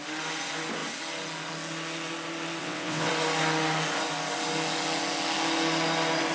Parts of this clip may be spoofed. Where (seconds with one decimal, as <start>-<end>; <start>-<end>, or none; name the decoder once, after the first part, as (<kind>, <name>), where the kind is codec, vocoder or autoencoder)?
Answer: 2.6-3.1 (vocoder, WaveNeXt)